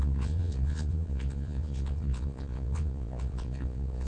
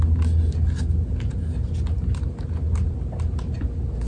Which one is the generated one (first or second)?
first